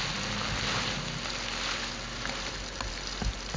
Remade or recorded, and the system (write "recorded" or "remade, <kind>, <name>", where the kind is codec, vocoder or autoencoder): recorded